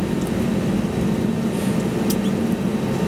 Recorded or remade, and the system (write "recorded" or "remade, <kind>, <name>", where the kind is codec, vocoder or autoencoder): recorded